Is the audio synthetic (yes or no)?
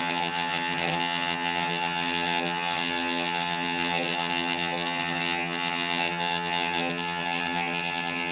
yes